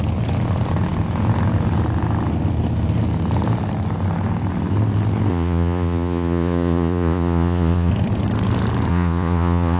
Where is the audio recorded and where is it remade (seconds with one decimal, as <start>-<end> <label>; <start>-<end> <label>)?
0.0-5.3 recorded; 5.3-7.9 remade; 7.9-8.9 recorded; 8.9-9.8 remade